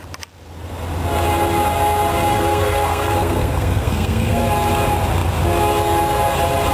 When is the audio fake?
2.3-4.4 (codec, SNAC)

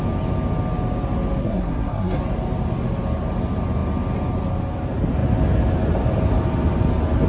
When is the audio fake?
1.4-2.2 (codec, SNAC)

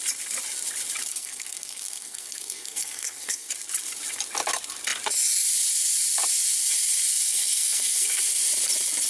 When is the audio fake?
1.1-3.5 (codec, SNAC); 7.1-8.2

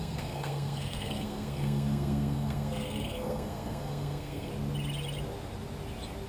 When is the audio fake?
0.0-4.5 (codec, SNAC)

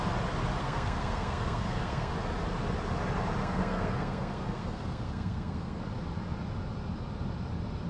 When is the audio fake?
0.6-2.1 (codec, SNAC); 3.4-5.8